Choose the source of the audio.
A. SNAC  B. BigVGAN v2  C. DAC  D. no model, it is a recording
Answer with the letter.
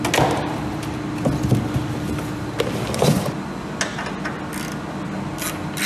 D